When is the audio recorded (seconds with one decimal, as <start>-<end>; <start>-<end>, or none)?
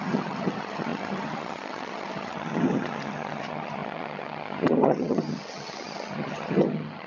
none